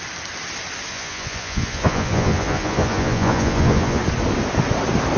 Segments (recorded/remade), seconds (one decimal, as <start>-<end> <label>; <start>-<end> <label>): 0.0-0.9 recorded; 0.9-4.0 remade; 4.0-5.2 recorded